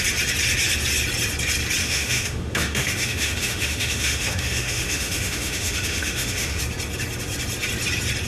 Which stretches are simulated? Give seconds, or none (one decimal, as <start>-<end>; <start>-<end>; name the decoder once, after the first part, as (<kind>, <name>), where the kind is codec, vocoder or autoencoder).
1.8-6.6 (autoencoder, DAC-VAE)